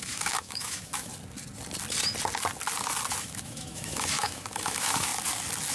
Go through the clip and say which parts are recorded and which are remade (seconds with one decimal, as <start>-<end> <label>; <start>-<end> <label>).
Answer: 0.0-1.1 remade; 1.1-3.2 recorded; 3.2-5.1 remade; 5.1-5.7 recorded

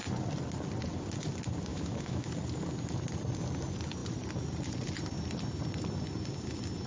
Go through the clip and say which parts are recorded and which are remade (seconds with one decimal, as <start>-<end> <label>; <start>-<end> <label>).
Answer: 0.0-1.7 recorded; 1.7-2.3 remade; 2.3-6.9 recorded

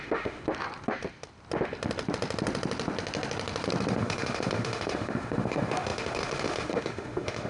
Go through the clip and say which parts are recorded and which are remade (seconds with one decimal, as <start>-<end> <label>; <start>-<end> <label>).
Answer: 0.0-0.4 remade; 0.4-3.9 recorded; 3.9-7.5 remade

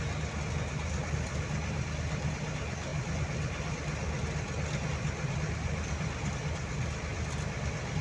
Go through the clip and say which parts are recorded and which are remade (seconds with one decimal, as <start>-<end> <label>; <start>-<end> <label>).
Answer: 0.0-8.0 recorded

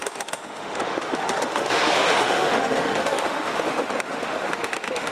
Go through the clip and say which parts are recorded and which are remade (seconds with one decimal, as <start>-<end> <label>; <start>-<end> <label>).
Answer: 0.0-5.1 remade

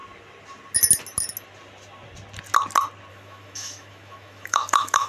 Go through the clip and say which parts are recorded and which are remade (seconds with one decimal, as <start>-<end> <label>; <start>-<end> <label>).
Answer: 0.0-3.1 recorded; 3.1-5.1 remade

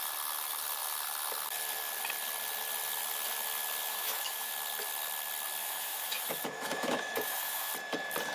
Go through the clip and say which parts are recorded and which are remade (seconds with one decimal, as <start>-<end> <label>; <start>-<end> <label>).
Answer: 0.0-3.9 recorded; 3.9-4.5 remade; 4.5-5.6 recorded; 5.6-7.7 remade; 7.7-8.3 recorded

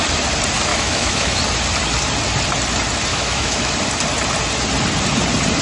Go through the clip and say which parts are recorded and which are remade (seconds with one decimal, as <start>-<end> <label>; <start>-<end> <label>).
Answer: 0.0-0.7 recorded; 0.7-1.4 remade; 1.4-3.1 recorded; 3.1-3.7 remade; 3.7-5.6 recorded